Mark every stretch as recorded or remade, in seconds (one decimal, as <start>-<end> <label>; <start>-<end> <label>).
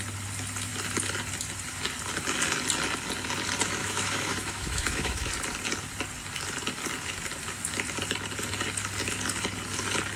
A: 0.0-3.8 recorded; 3.8-5.3 remade; 5.3-10.2 recorded